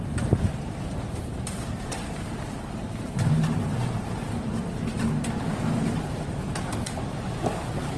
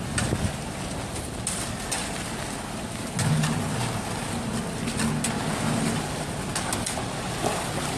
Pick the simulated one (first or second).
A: first